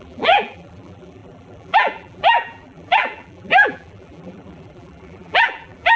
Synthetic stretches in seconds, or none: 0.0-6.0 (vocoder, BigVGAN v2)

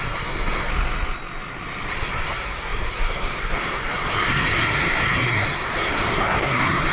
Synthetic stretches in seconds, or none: 0.0-0.7 (codec, SNAC); 1.9-6.9

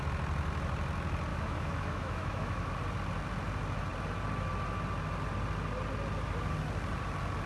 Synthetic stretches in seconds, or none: 1.3-2.7 (autoencoder, DAC-VAE)

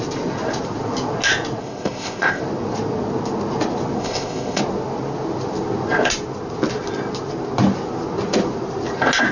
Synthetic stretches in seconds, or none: 1.6-2.4 (codec, ZipCodec); 4.0-4.6

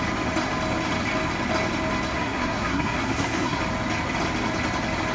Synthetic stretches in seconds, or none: 2.1-3.6 (codec, SNAC)

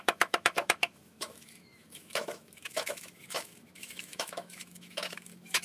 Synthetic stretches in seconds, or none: 0.0-5.6 (autoencoder, DAC-VAE)

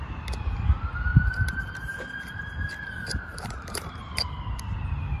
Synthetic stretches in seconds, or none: 1.1-4.2 (vocoder, BigVGAN v2)

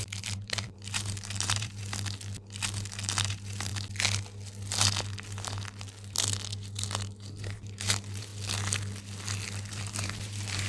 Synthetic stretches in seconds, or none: 0.0-1.8 (vocoder, BigVGAN v2); 3.3-3.7; 7.4-8.3; 9.7-10.7